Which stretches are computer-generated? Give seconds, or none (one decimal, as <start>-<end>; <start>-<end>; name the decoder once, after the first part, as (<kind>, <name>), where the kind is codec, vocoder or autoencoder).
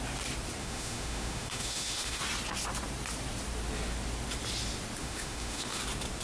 0.6-2.2 (autoencoder, DAC-VAE); 5.0-5.8